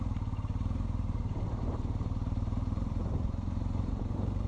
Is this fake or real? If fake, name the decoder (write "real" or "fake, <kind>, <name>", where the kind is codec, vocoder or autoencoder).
fake, vocoder, BigVGAN v2